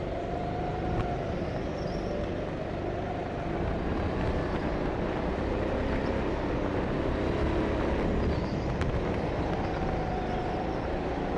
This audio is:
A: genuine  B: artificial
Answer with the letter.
A